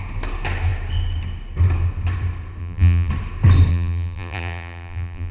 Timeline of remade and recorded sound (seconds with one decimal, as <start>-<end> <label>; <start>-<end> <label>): 0.0-2.6 recorded; 2.6-3.1 remade; 3.1-3.7 recorded; 3.7-5.3 remade

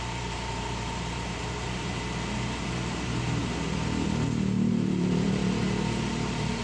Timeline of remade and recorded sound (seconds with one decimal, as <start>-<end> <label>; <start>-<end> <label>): 0.0-3.4 remade; 3.4-4.7 recorded; 4.7-5.4 remade; 5.4-6.0 recorded; 6.0-6.6 remade

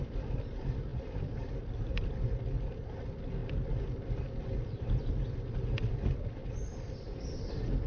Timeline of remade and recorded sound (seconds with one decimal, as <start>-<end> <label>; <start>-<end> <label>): 0.0-0.9 recorded; 0.9-1.6 remade; 1.6-7.9 recorded

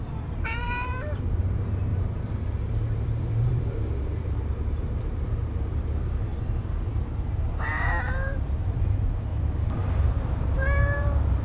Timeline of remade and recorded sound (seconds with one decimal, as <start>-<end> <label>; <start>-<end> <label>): 0.0-6.3 remade; 6.3-7.0 recorded; 7.0-9.3 remade; 9.3-10.1 recorded; 10.1-11.4 remade